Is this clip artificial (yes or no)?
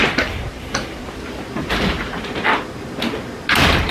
no